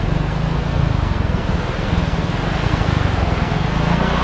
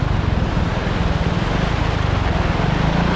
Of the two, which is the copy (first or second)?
first